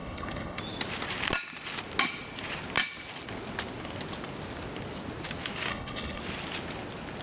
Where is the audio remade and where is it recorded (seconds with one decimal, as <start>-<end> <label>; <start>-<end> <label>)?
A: 0.0-0.6 remade; 0.6-5.7 recorded; 5.7-6.2 remade; 6.2-7.2 recorded